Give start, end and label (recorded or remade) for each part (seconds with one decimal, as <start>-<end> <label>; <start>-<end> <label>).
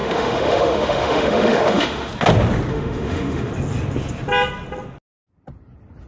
0.0-2.1 remade; 2.1-2.7 recorded; 2.7-3.5 remade; 3.5-6.1 recorded